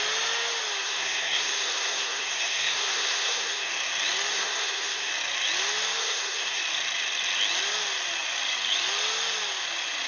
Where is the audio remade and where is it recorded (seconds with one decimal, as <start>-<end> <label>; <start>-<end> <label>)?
0.0-0.8 recorded; 0.8-3.7 remade; 3.7-4.3 recorded; 4.3-5.1 remade; 5.1-6.0 recorded; 6.0-6.6 remade; 6.6-10.1 recorded